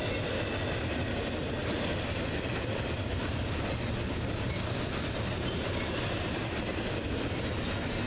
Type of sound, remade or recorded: recorded